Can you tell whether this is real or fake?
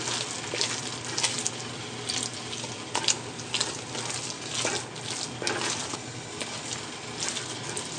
real